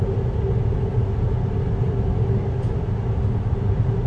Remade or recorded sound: recorded